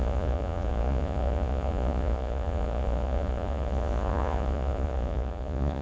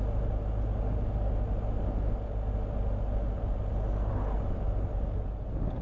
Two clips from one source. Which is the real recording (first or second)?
second